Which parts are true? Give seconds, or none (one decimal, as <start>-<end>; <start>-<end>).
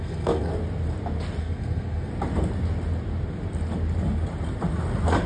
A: 0.5-1.4; 2.1-5.3